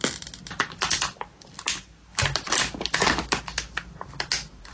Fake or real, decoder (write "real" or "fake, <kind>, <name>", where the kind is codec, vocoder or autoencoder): real